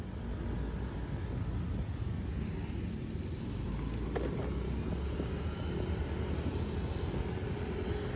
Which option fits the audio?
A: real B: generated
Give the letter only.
A